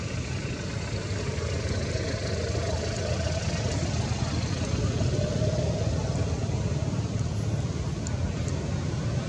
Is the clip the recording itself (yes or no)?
yes